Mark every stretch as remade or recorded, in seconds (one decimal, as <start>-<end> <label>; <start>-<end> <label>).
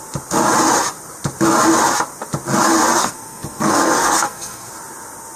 0.0-3.0 recorded; 3.0-4.7 remade; 4.7-5.4 recorded